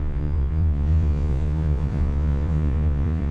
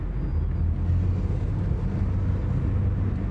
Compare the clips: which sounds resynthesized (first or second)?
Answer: first